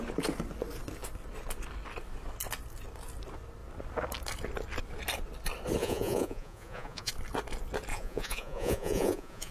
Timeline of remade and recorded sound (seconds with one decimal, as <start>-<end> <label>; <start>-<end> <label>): 0.0-5.8 recorded; 5.8-7.1 remade; 7.1-7.9 recorded; 7.9-9.5 remade